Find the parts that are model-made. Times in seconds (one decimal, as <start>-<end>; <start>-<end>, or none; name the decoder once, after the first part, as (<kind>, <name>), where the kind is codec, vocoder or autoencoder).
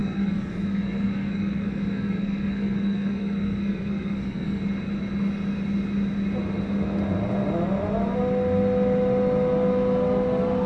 0.0-4.6 (codec, SNAC)